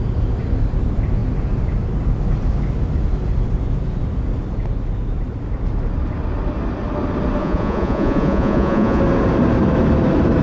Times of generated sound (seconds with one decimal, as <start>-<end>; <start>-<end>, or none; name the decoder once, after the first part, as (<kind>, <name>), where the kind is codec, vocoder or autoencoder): 7.4-9.0 (vocoder, Vocos)